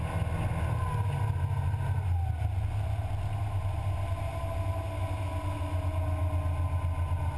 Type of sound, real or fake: real